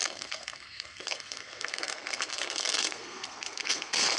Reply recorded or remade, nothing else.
remade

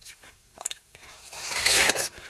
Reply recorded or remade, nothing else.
remade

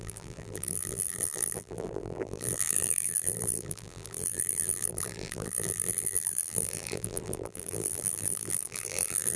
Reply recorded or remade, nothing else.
remade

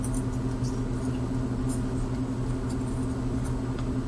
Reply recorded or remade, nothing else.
recorded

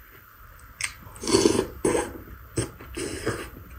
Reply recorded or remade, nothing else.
recorded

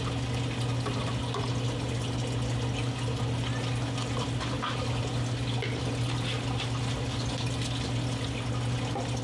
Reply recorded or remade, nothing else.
recorded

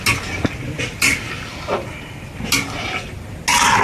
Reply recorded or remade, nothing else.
recorded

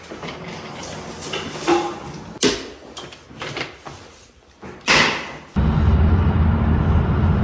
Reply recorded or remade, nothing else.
recorded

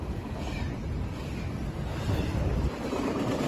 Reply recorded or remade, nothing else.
recorded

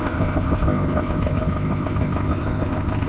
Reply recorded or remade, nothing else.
remade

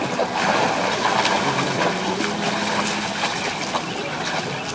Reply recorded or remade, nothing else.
recorded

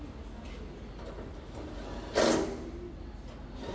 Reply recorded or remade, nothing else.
recorded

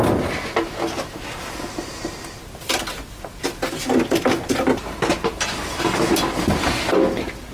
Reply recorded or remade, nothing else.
recorded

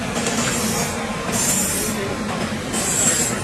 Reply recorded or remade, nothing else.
recorded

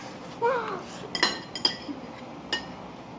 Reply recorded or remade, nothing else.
recorded